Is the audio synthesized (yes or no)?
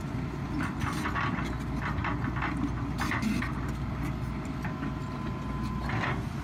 no